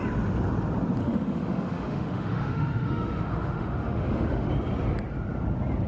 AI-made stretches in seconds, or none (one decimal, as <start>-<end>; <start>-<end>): 1.0-4.5